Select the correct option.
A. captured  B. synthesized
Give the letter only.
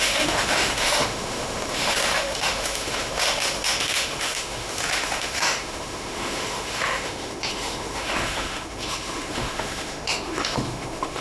B